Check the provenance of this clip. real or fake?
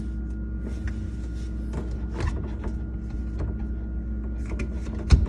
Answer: real